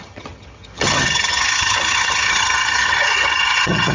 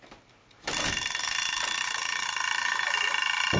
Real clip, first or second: second